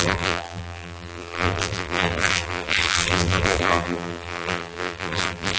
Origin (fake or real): fake